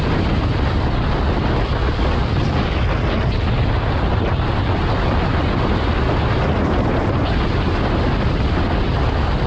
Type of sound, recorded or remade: recorded